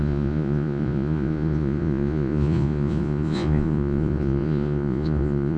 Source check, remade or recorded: remade